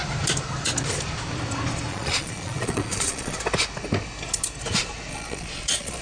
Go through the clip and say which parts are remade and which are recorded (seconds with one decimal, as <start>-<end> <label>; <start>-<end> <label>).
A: 0.0-1.9 recorded; 1.9-3.4 remade; 3.4-5.1 recorded; 5.1-6.0 remade